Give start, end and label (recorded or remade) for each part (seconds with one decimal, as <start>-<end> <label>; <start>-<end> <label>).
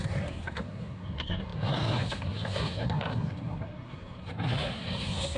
0.0-5.4 remade